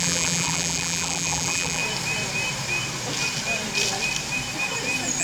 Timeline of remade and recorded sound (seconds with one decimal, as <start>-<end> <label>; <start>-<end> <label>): 0.0-1.8 remade; 1.8-5.2 recorded